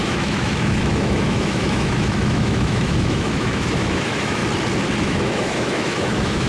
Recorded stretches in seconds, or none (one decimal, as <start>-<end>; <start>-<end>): 4.4-5.0